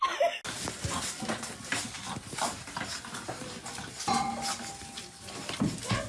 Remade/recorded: recorded